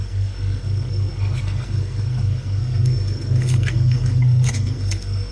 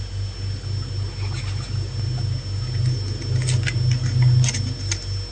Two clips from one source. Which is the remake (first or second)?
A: first